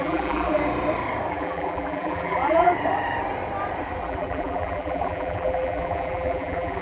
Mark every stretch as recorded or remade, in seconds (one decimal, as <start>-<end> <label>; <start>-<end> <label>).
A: 0.0-0.6 remade; 0.6-1.3 recorded; 1.3-2.7 remade; 2.7-4.0 recorded; 4.0-6.8 remade